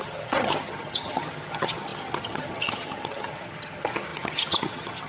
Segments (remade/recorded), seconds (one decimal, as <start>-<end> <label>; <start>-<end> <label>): 0.0-5.1 remade

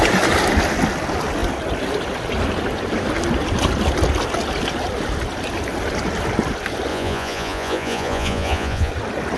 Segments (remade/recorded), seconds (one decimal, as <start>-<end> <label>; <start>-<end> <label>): 0.0-6.9 recorded; 6.9-8.9 remade; 8.9-9.4 recorded

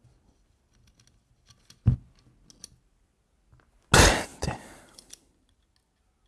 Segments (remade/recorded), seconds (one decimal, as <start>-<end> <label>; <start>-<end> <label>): 0.0-4.3 recorded; 4.3-5.4 remade; 5.4-6.3 recorded

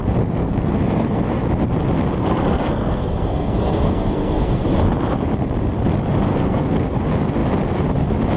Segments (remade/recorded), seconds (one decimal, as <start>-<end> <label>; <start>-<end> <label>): 0.0-0.4 recorded; 0.4-1.4 remade; 1.4-2.2 recorded; 2.2-4.6 remade; 4.6-6.3 recorded; 6.3-7.0 remade; 7.0-8.4 recorded

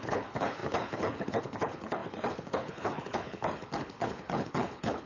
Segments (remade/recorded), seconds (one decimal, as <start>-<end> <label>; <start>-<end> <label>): 0.0-5.1 remade